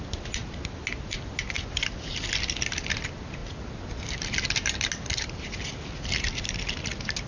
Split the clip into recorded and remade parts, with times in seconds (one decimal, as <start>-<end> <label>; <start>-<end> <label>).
0.0-7.3 recorded